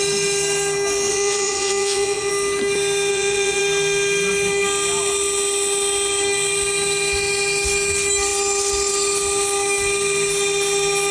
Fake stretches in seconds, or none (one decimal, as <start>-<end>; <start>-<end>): 1.1-2.3; 3.1-3.6